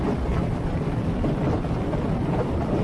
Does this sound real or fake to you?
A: real